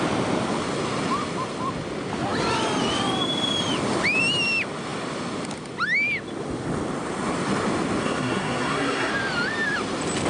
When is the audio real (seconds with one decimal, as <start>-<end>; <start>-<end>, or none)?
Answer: 0.0-8.0; 9.1-10.3